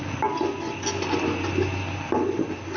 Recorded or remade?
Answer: recorded